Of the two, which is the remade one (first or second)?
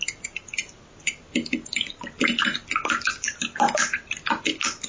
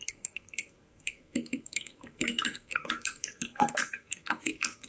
second